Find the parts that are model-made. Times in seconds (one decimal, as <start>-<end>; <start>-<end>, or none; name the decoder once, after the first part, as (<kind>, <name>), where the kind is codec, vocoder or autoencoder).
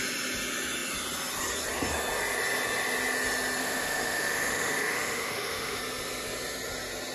3.6-5.8 (autoencoder, DAC-VAE)